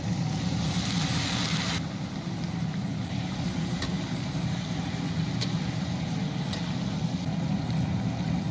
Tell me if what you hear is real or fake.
real